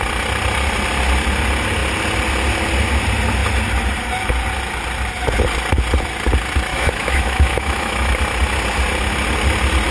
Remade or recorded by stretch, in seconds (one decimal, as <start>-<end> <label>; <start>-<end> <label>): 0.0-6.7 recorded; 6.7-8.1 remade; 8.1-9.9 recorded